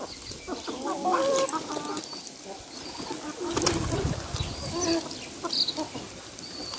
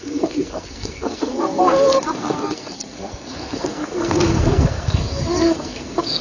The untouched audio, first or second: first